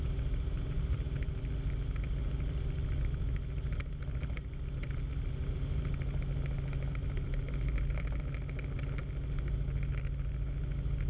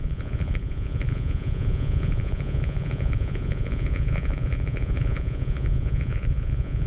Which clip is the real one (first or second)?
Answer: first